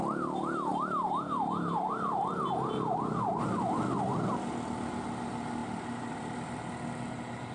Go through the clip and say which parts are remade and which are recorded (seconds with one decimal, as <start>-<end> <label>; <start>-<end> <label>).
0.0-0.7 recorded; 0.7-1.5 remade; 1.5-5.6 recorded; 5.6-6.7 remade; 6.7-7.5 recorded

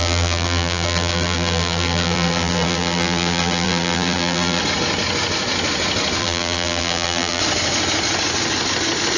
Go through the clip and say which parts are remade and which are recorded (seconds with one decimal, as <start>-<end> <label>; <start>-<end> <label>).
0.0-4.6 remade; 4.6-6.2 recorded; 6.2-7.4 remade; 7.4-9.2 recorded